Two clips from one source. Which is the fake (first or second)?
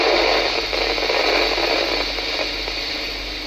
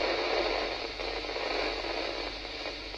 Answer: first